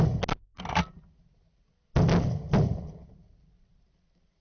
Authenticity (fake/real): real